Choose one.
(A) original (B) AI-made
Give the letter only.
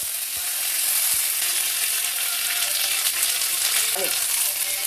A